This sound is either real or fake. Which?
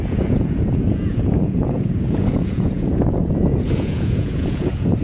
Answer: fake